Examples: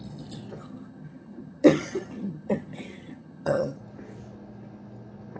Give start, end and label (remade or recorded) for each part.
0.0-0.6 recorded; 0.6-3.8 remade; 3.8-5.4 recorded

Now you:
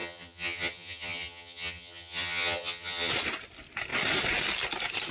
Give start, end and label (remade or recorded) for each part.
0.0-3.1 remade; 3.1-5.1 recorded

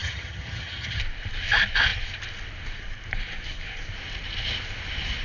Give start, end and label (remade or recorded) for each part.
0.0-1.0 remade; 1.0-5.2 recorded

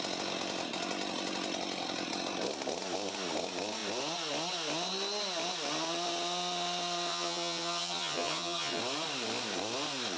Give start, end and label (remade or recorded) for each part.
0.0-7.1 recorded; 7.1-8.8 remade; 8.8-10.2 recorded

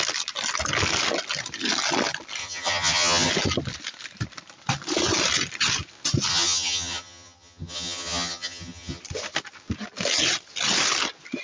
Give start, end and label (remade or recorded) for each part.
0.0-2.4 recorded; 2.4-3.3 remade; 3.3-6.3 recorded; 6.3-9.0 remade; 9.0-11.4 recorded

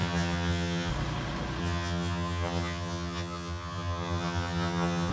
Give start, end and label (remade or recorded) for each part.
0.0-0.9 remade; 0.9-1.6 recorded; 1.6-5.1 remade

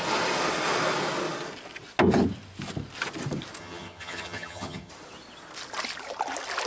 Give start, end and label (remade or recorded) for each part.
0.0-3.6 recorded; 3.6-4.9 remade; 4.9-6.7 recorded

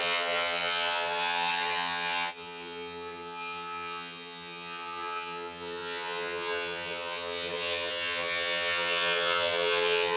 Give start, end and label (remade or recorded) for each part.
0.0-10.2 remade